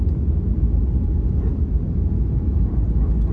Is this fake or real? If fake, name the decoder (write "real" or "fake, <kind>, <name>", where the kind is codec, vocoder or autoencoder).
real